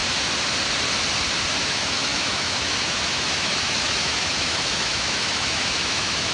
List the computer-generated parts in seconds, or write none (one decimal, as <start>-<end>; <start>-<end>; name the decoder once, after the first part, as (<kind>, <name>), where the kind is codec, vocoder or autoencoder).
1.6-6.3 (autoencoder, DAC-VAE)